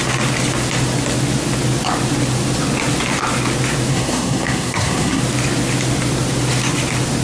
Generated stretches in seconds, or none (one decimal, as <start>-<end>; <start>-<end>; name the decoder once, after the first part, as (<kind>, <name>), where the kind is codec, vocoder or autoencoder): 3.9-5.2 (codec, SNAC)